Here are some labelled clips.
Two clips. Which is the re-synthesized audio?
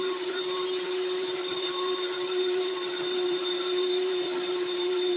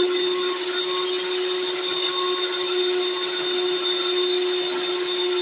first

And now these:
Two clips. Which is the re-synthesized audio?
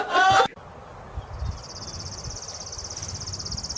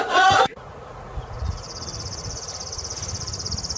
second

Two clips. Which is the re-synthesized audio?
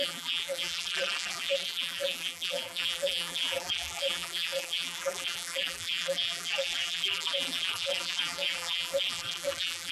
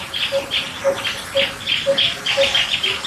first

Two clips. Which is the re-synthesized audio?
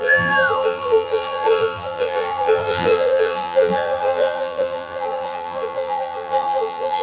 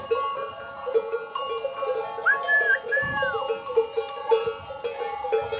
first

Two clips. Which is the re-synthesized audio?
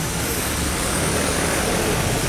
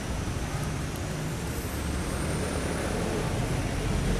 first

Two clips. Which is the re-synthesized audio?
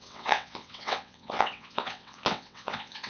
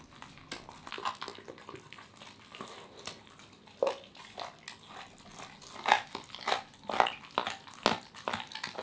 first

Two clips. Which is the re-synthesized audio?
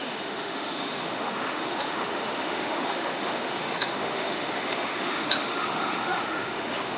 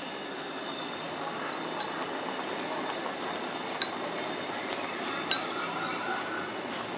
first